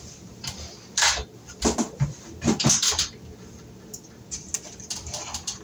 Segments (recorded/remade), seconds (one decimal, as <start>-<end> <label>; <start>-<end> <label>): 0.0-2.9 remade; 2.9-4.9 recorded; 4.9-5.6 remade